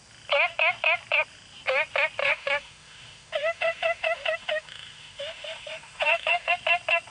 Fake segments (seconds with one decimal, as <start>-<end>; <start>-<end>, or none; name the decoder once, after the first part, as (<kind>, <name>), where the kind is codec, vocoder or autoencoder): 2.2-6.5 (autoencoder, DAC-VAE)